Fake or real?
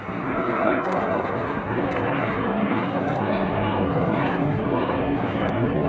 fake